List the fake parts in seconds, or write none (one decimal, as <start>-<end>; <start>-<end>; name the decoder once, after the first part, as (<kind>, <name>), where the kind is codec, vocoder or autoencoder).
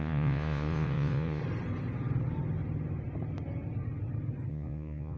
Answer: 0.0-1.4 (vocoder, Vocos); 4.5-5.2